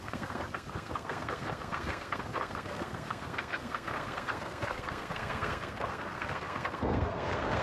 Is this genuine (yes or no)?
no